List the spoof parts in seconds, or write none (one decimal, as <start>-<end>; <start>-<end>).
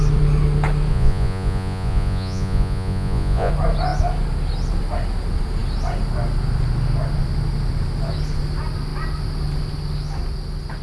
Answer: 0.9-3.5